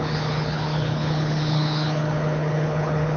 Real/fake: fake